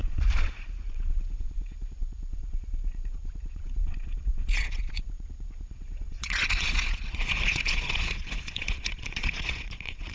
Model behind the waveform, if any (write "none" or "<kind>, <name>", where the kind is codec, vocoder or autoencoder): vocoder, Vocos